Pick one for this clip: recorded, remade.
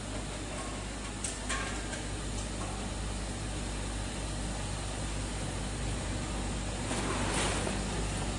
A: recorded